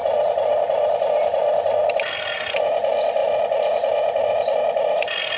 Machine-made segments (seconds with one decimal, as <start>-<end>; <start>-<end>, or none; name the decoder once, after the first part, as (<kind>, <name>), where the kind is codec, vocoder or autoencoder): 1.8-3.2 (vocoder, BigVGAN v2); 4.6-5.4